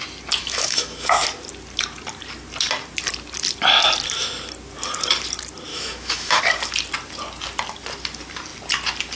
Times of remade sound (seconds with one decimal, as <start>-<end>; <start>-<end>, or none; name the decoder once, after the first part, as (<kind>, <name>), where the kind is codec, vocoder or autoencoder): 0.4-1.2 (autoencoder, DAC-VAE); 5.7-6.4